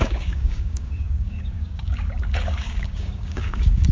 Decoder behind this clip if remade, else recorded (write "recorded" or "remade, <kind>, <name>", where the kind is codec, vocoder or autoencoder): remade, codec, DAC